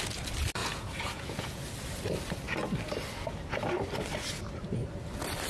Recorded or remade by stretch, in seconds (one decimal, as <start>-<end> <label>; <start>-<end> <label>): 0.0-0.6 recorded; 0.6-1.6 remade; 1.6-5.5 recorded